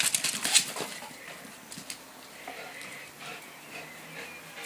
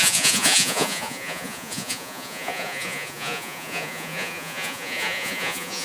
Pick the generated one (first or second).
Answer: second